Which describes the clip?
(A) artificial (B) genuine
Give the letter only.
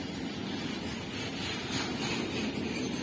B